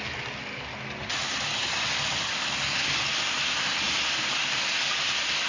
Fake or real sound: real